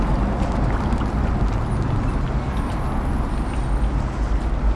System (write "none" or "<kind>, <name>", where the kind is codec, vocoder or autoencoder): none